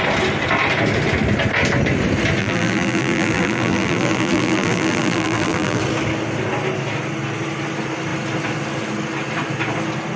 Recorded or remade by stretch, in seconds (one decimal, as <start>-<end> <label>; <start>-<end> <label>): 0.0-2.4 recorded; 2.4-5.8 remade; 5.8-10.2 recorded